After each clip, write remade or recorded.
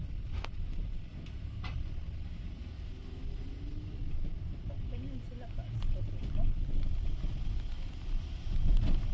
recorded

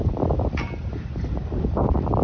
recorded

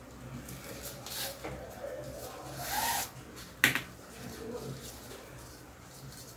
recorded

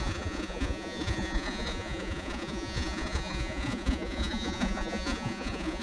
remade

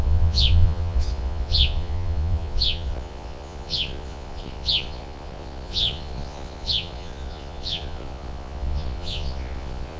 remade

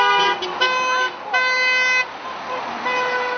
recorded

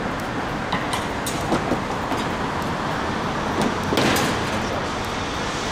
recorded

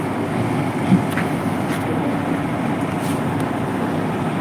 recorded